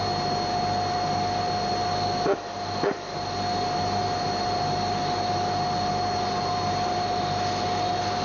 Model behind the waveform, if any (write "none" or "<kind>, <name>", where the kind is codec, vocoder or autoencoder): none